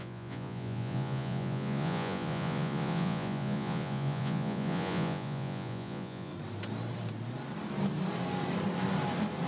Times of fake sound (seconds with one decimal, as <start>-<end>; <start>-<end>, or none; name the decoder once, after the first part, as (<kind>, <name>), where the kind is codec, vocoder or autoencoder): 0.0-6.3 (vocoder, Vocos)